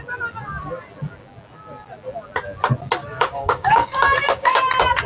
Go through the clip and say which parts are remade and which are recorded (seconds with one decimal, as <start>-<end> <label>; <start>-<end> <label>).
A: 0.0-3.0 recorded; 3.0-4.6 remade; 4.6-5.1 recorded